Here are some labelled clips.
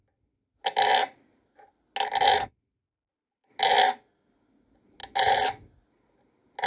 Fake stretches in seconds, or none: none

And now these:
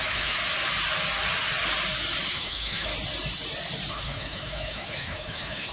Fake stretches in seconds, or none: 0.0-0.4; 2.3-2.9; 3.9-5.7

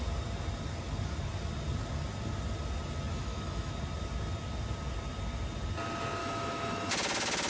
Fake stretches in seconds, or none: 3.1-3.8; 6.2-6.9

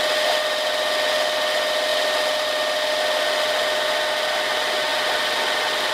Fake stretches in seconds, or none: none

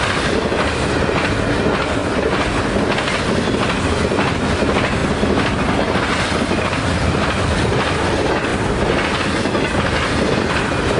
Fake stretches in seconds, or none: none

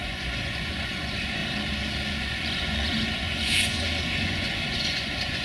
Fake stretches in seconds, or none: 0.0-1.4; 2.1-5.4